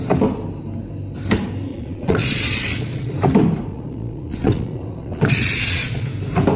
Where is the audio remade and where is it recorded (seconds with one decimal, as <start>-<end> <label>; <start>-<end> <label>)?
0.0-1.7 recorded; 1.7-3.1 remade; 3.1-3.7 recorded; 3.7-6.1 remade; 6.1-6.6 recorded

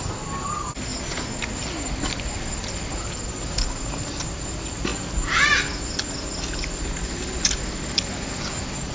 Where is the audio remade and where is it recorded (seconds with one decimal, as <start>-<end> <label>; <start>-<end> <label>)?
0.0-8.9 recorded

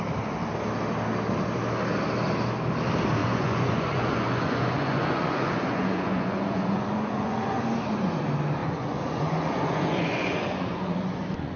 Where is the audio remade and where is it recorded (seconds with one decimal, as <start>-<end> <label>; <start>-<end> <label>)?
0.0-3.2 recorded; 3.2-7.6 remade; 7.6-8.6 recorded; 8.6-11.6 remade